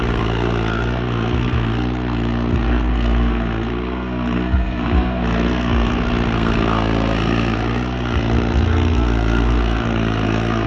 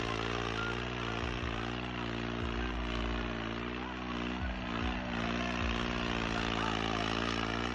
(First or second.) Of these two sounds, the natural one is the second